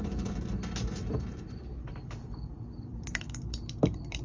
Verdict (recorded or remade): remade